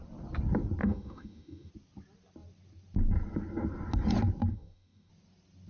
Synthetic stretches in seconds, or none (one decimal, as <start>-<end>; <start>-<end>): 0.8-1.7; 4.5-5.1